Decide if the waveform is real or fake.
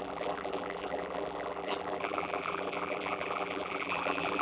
fake